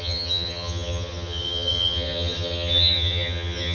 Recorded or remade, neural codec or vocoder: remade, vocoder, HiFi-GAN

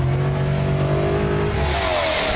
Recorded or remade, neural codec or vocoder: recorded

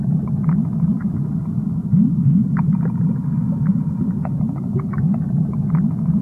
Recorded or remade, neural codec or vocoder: recorded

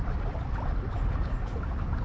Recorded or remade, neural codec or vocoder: remade, vocoder, BigVGAN v2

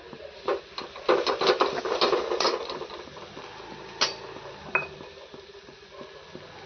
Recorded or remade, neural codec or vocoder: recorded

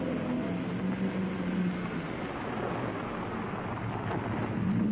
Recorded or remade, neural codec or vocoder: recorded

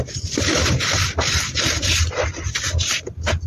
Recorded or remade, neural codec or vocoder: recorded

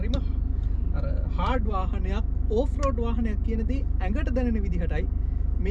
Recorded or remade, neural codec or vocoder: recorded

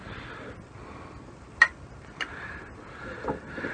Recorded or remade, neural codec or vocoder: recorded